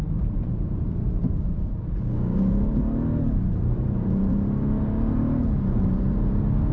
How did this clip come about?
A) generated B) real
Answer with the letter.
A